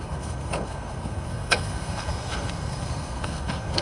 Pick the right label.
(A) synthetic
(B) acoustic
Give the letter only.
A